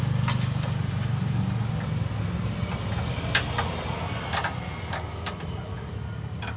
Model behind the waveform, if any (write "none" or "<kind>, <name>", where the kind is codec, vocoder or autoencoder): none